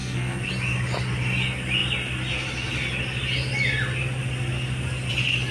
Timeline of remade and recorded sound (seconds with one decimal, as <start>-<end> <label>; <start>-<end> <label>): 0.0-0.5 remade; 0.5-5.5 recorded